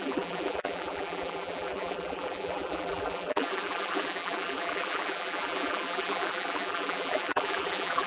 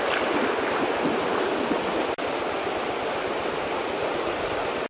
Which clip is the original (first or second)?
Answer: second